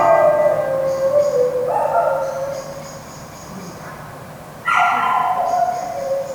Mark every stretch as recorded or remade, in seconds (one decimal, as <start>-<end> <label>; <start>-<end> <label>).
0.0-1.6 recorded; 1.6-2.3 remade; 2.3-3.4 recorded; 3.4-3.9 remade; 3.9-6.3 recorded